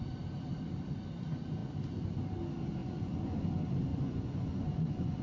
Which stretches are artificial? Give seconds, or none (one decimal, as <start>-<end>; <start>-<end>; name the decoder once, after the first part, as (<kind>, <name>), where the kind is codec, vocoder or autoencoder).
2.8-3.4 (vocoder, Vocos); 3.9-5.2